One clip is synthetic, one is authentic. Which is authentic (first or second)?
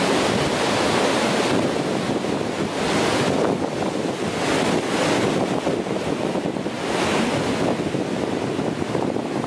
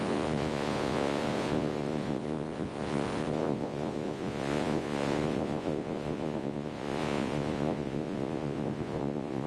first